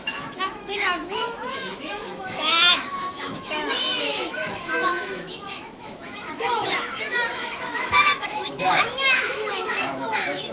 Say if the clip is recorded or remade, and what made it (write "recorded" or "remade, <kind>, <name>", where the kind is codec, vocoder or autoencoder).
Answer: remade, autoencoder, DAC-VAE